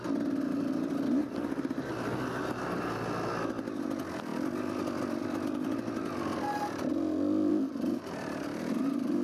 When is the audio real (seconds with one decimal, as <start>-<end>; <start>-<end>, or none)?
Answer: 0.0-9.2